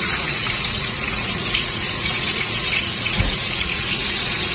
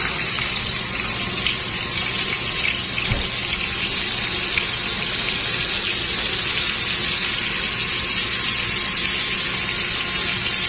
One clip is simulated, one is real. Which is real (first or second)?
second